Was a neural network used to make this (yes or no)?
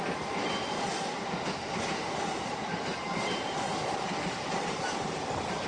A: no